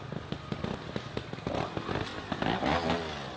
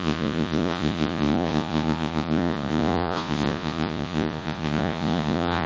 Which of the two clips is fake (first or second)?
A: second